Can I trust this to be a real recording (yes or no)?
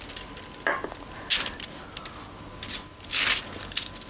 yes